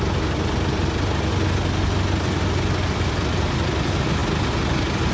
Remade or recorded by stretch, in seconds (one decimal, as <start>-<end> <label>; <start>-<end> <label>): 0.0-5.1 recorded